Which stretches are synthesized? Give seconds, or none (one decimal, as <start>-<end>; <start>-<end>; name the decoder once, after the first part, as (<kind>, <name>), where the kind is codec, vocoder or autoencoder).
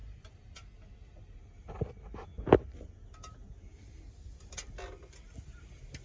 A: none